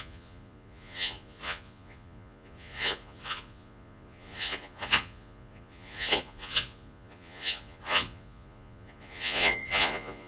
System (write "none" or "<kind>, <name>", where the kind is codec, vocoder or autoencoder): vocoder, Vocos